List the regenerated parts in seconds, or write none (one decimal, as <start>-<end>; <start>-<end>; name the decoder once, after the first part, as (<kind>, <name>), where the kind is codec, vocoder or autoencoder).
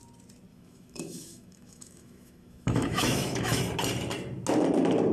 0.5-3.6 (autoencoder, DAC-VAE)